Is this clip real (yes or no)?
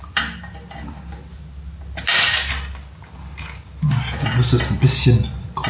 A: yes